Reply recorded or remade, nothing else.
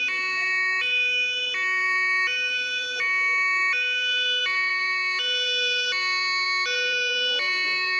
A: remade